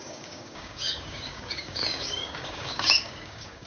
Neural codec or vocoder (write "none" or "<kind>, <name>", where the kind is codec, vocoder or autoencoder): codec, DAC